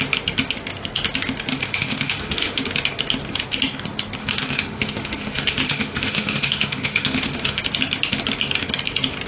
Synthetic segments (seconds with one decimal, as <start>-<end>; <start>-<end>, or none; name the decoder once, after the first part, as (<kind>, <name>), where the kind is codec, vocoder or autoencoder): 1.5-2.6 (autoencoder, DAC-VAE); 4.2-7.6